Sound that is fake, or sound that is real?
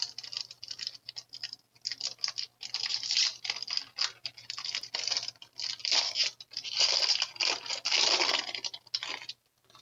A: real